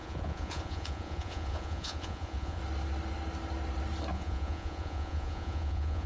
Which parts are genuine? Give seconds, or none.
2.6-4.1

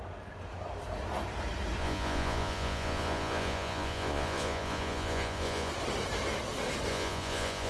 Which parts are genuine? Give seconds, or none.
0.0-1.8; 5.7-6.9

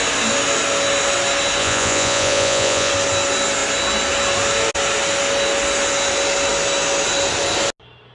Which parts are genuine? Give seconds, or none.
0.0-1.6; 2.9-8.1

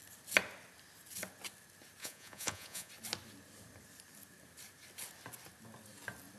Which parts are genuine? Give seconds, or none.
0.0-2.0; 2.9-6.4

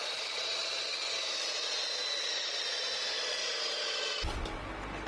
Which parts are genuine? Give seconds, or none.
0.6-1.4; 3.4-5.1

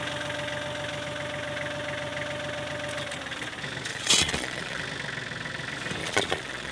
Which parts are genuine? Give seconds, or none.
0.0-3.9; 4.8-6.0

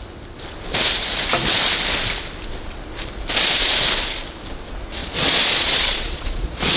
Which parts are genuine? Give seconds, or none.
0.0-5.0

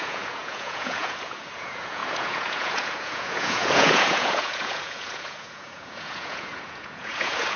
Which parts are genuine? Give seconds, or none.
none